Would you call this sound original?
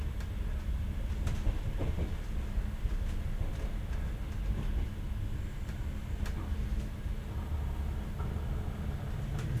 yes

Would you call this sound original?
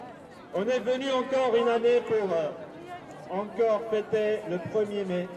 yes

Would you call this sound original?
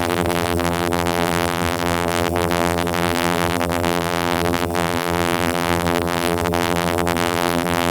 no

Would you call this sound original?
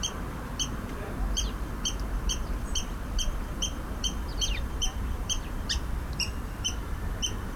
no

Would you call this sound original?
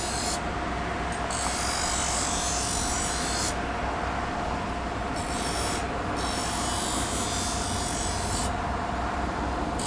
yes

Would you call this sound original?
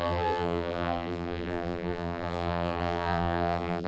no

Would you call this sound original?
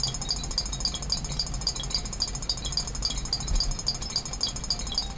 yes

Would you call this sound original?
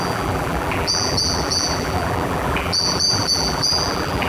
no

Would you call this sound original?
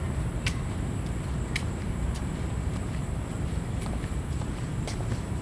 no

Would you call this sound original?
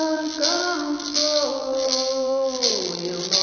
no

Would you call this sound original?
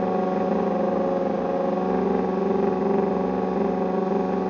yes